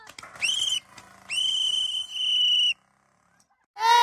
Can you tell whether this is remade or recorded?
recorded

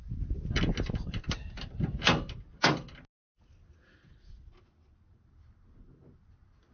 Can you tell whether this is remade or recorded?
recorded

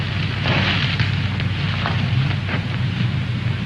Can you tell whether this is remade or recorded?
recorded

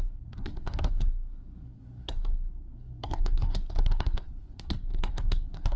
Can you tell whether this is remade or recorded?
remade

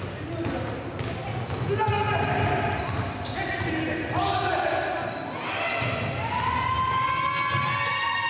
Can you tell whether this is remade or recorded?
recorded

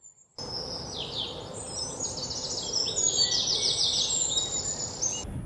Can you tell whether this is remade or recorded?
recorded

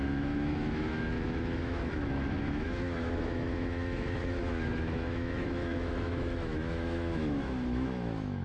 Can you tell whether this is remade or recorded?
remade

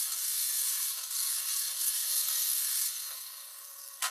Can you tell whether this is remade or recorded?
remade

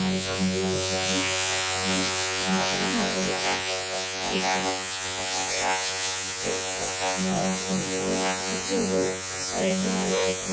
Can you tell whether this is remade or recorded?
remade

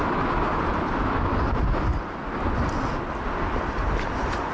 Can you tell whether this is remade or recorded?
recorded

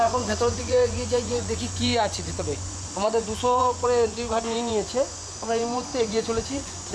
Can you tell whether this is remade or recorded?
remade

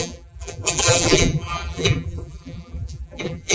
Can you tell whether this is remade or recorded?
remade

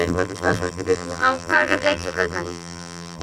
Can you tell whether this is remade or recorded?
remade